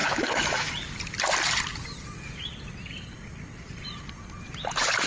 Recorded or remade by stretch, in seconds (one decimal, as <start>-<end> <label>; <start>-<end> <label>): 0.0-0.7 remade; 0.7-5.1 recorded